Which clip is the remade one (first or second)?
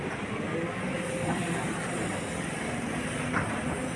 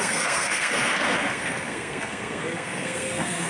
second